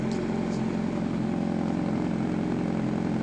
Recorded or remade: recorded